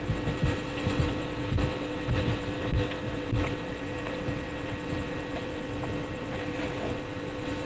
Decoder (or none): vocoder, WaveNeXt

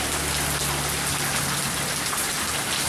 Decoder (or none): none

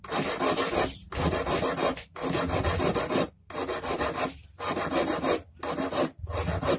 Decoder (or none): vocoder, BigVGAN v2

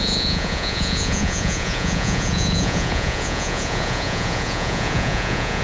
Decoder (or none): vocoder, Vocos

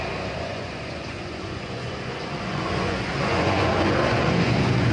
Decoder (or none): vocoder, Vocos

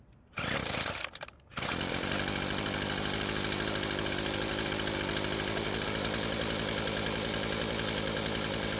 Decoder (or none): none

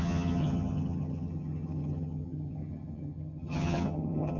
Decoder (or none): vocoder, HiFi-GAN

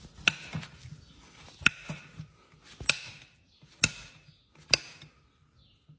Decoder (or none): none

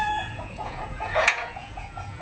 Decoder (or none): vocoder, Vocos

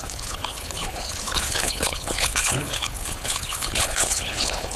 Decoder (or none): codec, HILCodec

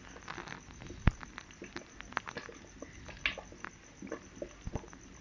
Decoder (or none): none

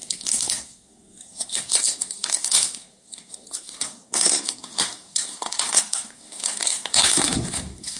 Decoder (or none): codec, SNAC